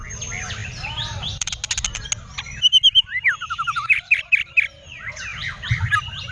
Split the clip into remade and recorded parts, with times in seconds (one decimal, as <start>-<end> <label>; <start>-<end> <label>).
0.0-0.6 recorded; 0.6-1.5 remade; 1.5-3.1 recorded; 3.1-4.2 remade; 4.2-6.3 recorded